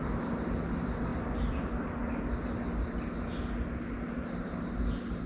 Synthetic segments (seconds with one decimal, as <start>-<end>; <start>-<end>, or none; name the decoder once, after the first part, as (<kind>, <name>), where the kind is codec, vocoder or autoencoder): none